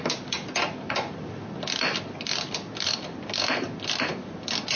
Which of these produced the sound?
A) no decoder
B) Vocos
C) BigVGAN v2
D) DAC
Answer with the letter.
A